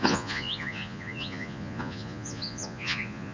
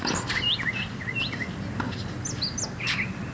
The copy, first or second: first